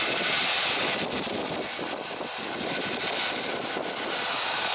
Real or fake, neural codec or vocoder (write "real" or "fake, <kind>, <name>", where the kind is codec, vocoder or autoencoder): real